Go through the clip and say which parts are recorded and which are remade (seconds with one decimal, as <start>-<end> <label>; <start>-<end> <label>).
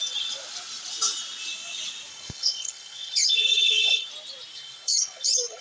0.0-2.1 recorded; 2.1-4.1 remade; 4.1-4.5 recorded; 4.5-5.6 remade